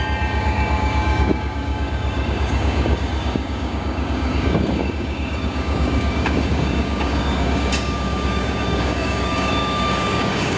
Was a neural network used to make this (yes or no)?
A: yes